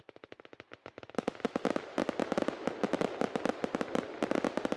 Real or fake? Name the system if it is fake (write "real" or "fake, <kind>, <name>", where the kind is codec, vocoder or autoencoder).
real